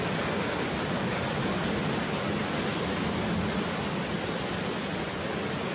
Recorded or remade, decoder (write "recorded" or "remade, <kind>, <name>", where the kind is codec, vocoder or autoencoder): recorded